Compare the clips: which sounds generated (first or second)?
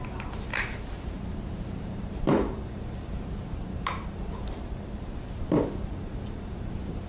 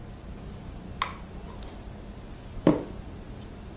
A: first